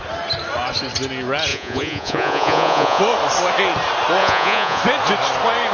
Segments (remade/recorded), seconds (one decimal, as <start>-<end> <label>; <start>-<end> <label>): 0.0-1.5 recorded; 1.5-3.0 remade; 3.0-4.2 recorded; 4.2-4.8 remade; 4.8-5.7 recorded